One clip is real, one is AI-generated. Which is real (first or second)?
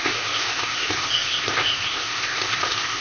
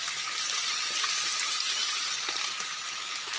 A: second